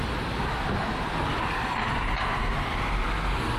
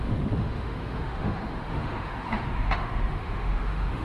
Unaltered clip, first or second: first